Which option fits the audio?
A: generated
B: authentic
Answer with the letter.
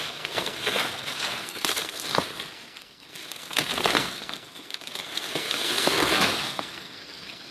A